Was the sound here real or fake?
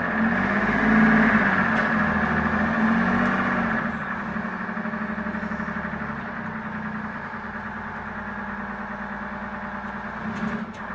real